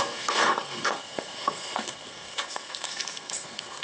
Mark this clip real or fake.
fake